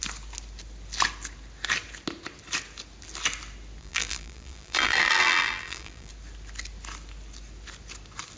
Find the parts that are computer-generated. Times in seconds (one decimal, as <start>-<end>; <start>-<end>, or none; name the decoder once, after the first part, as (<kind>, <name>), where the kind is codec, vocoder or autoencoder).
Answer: 3.8-6.1 (vocoder, BigVGAN v2)